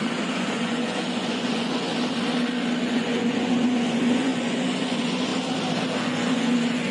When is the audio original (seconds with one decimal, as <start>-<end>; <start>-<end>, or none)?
1.9-2.8; 5.3-6.0